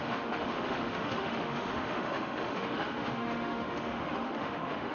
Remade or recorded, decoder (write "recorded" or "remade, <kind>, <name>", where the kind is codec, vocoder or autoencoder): remade, autoencoder, DAC-VAE